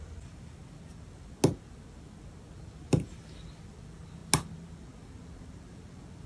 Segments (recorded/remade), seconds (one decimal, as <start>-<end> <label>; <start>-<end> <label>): 0.0-6.3 recorded